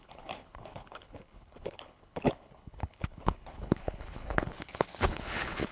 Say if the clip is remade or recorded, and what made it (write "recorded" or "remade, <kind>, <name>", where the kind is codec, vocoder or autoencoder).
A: remade, codec, HILCodec